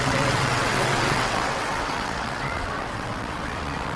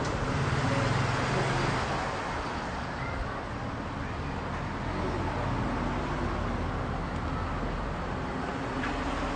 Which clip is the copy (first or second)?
first